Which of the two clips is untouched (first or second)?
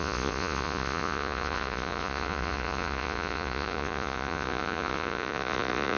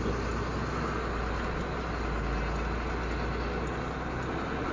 second